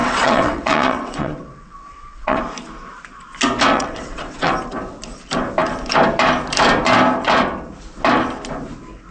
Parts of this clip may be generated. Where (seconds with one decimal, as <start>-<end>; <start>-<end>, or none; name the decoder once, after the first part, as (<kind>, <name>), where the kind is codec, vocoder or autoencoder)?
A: 0.0-2.4 (vocoder, WaveNeXt); 3.7-4.5